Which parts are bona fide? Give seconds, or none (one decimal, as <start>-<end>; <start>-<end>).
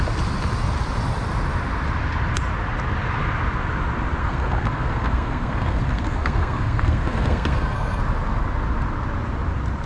0.0-4.2; 8.0-9.9